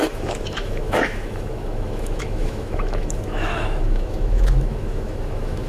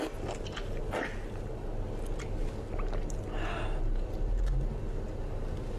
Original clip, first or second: second